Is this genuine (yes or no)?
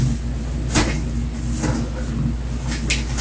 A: yes